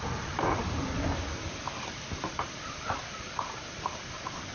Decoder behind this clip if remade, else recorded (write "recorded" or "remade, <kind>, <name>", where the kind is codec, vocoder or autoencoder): recorded